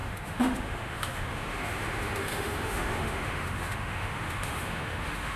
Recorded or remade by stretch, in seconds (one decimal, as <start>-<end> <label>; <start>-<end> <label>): 0.0-5.4 remade